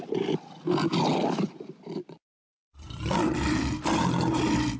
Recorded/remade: recorded